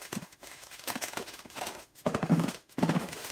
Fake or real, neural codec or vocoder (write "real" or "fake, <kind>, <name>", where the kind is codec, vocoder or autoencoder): fake, autoencoder, DAC-VAE